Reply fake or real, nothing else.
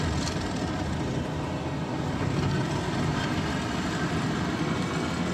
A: real